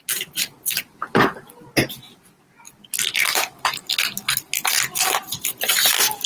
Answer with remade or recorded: recorded